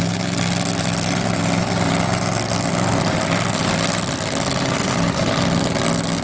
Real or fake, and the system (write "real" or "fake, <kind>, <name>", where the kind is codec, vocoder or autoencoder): real